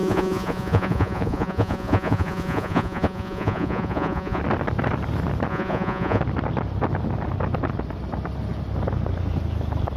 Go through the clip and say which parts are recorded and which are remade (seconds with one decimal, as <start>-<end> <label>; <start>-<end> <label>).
0.0-4.4 remade; 4.4-5.5 recorded; 5.5-6.2 remade; 6.2-10.0 recorded